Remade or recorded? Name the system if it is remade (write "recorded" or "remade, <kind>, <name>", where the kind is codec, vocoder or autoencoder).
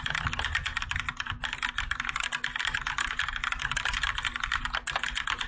recorded